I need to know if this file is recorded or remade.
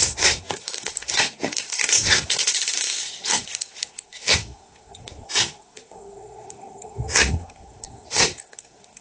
remade